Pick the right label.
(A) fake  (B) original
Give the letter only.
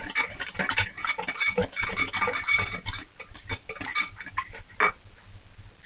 B